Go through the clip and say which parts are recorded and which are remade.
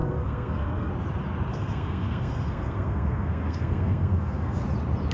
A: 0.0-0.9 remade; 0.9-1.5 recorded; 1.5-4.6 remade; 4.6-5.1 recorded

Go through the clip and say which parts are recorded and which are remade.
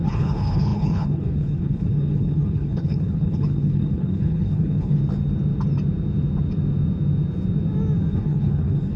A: 0.0-5.0 remade; 5.0-8.1 recorded; 8.1-9.0 remade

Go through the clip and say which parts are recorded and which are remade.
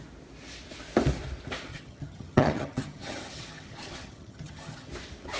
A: 0.0-1.7 recorded; 1.7-4.9 remade; 4.9-5.4 recorded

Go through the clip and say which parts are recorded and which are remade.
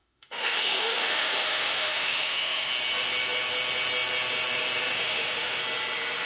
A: 0.0-2.7 remade; 2.7-4.9 recorded; 4.9-5.6 remade; 5.6-6.3 recorded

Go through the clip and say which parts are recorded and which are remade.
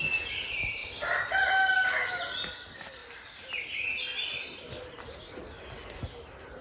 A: 0.0-6.6 recorded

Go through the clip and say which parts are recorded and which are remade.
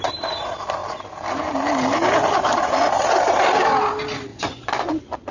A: 0.0-4.3 recorded; 4.3-5.3 remade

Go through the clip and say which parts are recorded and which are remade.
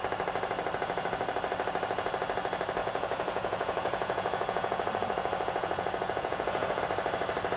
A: 0.0-2.8 recorded; 2.8-6.8 remade; 6.8-7.6 recorded